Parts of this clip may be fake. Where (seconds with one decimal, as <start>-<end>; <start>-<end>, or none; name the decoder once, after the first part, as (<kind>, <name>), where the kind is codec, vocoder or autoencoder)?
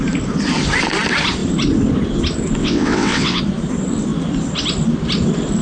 2.6-3.4 (vocoder, WaveNeXt)